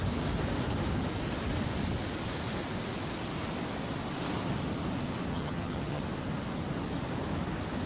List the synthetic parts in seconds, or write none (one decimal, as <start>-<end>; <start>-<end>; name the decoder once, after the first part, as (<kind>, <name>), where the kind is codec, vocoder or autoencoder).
5.3-6.0 (vocoder, HiFi-GAN)